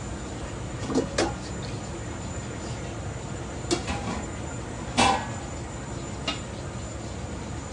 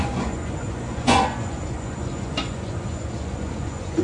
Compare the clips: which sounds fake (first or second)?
second